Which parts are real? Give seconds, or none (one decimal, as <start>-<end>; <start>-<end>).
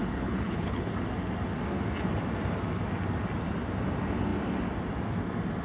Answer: 0.9-5.6